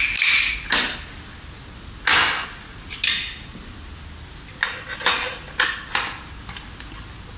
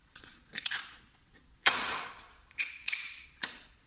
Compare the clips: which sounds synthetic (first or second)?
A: second